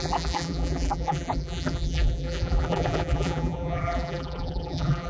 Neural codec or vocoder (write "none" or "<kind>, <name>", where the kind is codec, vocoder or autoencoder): vocoder, BigVGAN v2